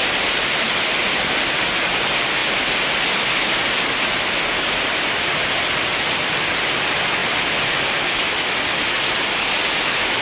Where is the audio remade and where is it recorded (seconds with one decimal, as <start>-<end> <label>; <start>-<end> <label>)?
0.0-10.2 recorded